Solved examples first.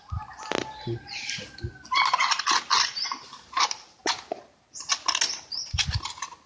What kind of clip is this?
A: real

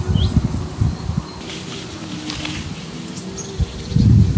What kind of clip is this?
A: real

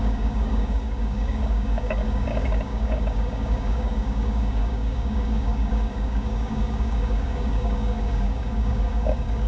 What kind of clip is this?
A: fake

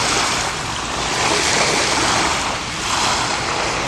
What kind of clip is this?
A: real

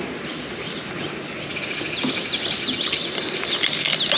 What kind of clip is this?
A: real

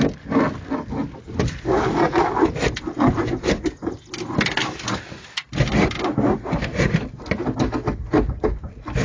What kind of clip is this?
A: real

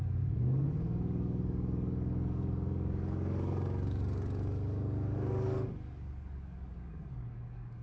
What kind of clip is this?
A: fake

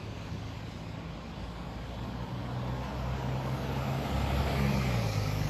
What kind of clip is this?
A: fake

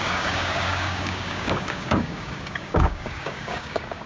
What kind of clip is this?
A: fake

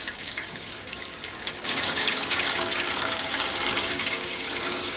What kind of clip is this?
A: fake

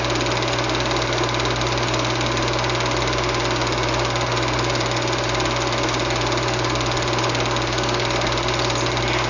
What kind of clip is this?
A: real